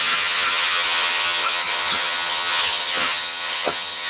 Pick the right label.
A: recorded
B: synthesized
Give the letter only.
B